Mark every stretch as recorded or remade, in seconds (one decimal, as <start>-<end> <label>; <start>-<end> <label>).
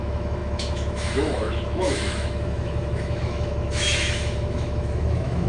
0.0-5.5 remade